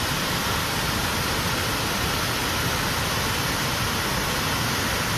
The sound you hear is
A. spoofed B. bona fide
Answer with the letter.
B